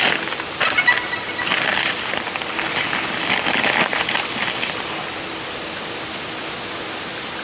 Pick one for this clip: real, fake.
real